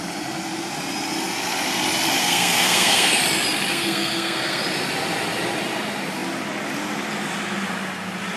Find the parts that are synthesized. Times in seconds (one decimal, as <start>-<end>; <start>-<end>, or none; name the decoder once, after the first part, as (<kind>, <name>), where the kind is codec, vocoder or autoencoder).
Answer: 2.2-3.2 (codec, SNAC); 3.7-4.6